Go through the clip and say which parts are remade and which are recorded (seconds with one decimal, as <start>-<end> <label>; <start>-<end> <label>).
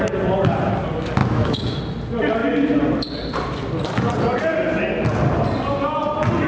0.0-1.2 recorded; 1.2-1.8 remade; 1.8-6.5 recorded